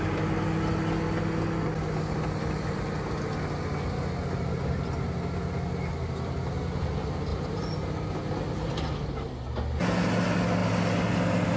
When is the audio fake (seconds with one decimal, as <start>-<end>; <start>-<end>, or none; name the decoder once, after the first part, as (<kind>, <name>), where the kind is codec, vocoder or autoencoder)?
7.3-8.2 (vocoder, BigVGAN v2)